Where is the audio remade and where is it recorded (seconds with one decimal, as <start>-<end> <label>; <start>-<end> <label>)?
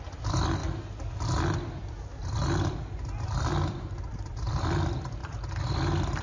0.0-5.2 remade; 5.2-6.2 recorded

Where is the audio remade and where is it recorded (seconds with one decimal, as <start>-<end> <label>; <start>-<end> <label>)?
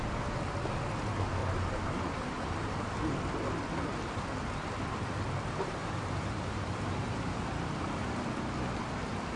0.0-1.4 recorded; 1.4-2.8 remade; 2.8-5.8 recorded; 5.8-8.1 remade; 8.1-9.4 recorded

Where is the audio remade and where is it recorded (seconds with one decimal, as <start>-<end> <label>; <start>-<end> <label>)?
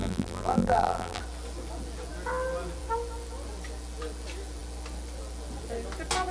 0.0-1.2 remade; 1.2-6.3 recorded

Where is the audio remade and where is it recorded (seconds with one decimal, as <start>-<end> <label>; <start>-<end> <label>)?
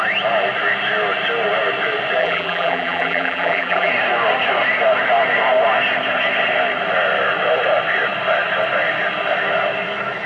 0.0-2.2 recorded; 2.2-3.9 remade; 3.9-10.3 recorded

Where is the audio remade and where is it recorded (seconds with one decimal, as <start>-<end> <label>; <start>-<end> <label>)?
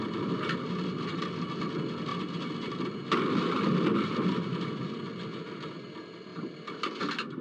0.0-6.3 recorded; 6.3-7.0 remade; 7.0-7.4 recorded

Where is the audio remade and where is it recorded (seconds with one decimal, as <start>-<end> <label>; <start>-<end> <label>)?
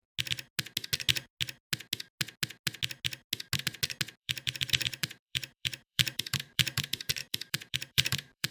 0.0-4.2 recorded; 4.2-8.5 remade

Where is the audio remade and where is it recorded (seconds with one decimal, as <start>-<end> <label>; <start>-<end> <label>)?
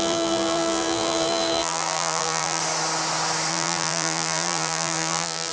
0.0-2.6 remade; 2.6-3.5 recorded; 3.5-5.5 remade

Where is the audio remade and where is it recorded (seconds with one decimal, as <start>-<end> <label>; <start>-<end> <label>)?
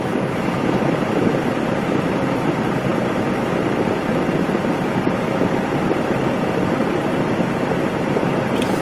0.0-8.8 recorded